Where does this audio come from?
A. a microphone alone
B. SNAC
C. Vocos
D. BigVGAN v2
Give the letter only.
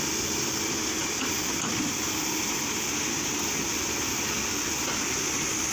A